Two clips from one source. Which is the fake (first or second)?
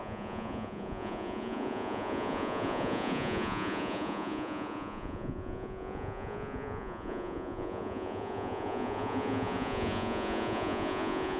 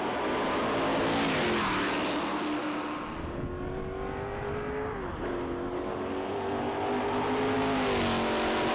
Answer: first